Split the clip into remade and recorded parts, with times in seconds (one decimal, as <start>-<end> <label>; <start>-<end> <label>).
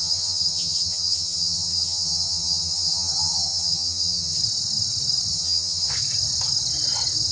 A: 0.0-4.4 remade; 4.4-5.3 recorded; 5.3-5.9 remade; 5.9-7.3 recorded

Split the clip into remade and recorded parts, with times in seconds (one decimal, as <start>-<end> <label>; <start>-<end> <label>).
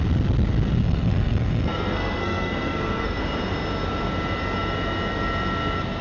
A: 0.0-0.8 recorded; 0.8-3.2 remade; 3.2-6.0 recorded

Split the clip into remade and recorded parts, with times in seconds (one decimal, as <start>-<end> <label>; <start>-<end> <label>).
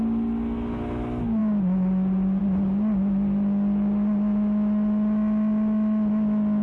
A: 0.0-6.6 recorded